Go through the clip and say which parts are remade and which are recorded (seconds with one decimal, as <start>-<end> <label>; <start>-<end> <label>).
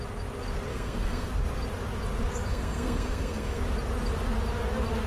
0.0-0.7 recorded; 0.7-1.3 remade; 1.3-2.5 recorded; 2.5-3.6 remade; 3.6-5.1 recorded